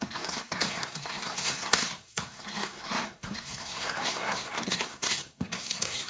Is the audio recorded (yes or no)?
no